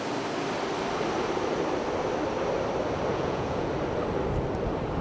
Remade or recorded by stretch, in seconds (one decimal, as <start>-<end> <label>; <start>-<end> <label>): 0.0-3.1 recorded; 3.1-3.7 remade; 3.7-5.0 recorded